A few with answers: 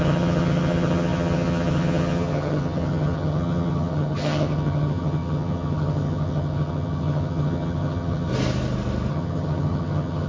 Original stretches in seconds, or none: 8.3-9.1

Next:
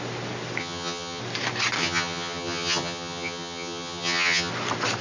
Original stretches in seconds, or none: 0.0-0.6; 1.2-1.8; 4.5-5.0

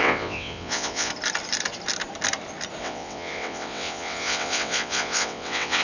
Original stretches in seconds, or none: 1.1-2.8

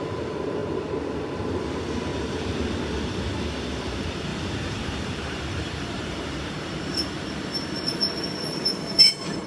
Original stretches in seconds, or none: 0.0-2.1; 2.8-4.3

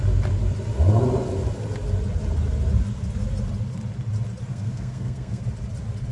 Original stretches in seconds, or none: 0.0-4.5; 5.4-6.1

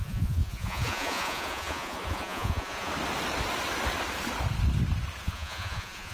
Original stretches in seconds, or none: 2.9-5.2

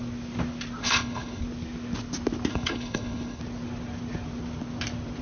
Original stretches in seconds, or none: 0.0-0.8; 1.4-2.5; 3.4-5.2